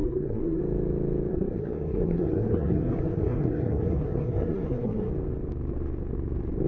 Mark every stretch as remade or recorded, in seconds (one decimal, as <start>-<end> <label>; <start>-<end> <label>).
0.0-0.6 remade; 0.6-1.3 recorded; 1.3-5.1 remade; 5.1-6.7 recorded